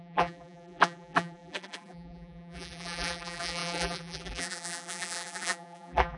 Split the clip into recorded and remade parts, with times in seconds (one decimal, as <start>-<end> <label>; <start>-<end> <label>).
0.0-6.2 remade